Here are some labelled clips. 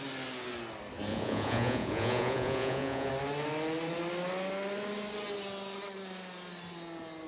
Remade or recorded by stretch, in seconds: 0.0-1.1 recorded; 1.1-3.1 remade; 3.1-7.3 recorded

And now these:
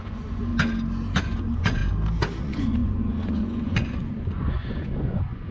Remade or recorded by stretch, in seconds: 0.0-0.5 remade; 0.5-1.2 recorded; 1.2-1.8 remade; 1.8-2.4 recorded; 2.4-5.5 remade

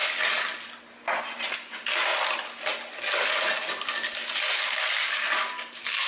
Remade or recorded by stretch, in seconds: 0.0-6.1 recorded

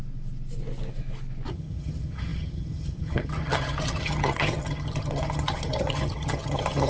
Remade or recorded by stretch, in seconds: 0.0-1.5 recorded; 1.5-6.9 remade

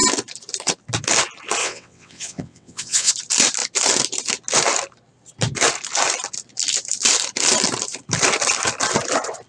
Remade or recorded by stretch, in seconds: 0.0-1.6 recorded; 1.6-3.1 remade; 3.1-9.5 recorded